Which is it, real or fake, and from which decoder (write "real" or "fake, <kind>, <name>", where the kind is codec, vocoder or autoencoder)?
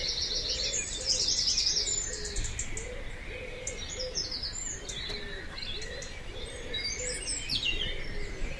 real